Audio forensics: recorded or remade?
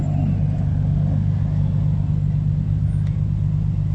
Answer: recorded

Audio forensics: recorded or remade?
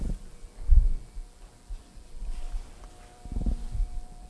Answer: remade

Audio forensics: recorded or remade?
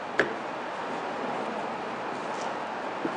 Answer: recorded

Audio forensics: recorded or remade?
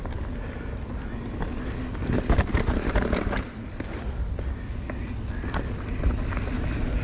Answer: recorded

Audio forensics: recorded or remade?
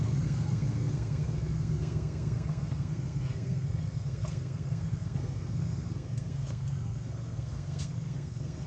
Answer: remade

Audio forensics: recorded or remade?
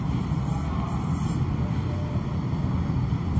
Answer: recorded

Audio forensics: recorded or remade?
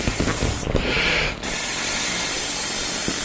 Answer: recorded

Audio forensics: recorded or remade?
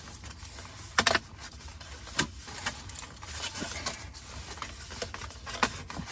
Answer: recorded